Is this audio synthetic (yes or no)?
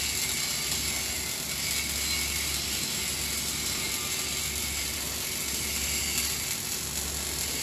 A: no